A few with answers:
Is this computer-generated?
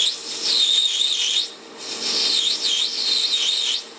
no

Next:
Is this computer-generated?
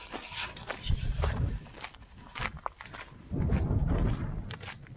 no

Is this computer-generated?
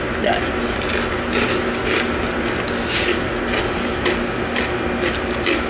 no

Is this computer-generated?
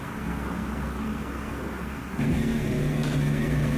yes